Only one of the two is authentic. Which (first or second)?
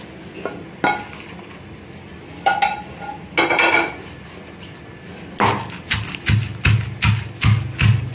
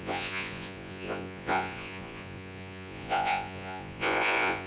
first